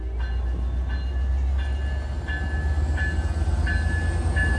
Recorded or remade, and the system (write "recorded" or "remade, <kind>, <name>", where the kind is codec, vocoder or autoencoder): recorded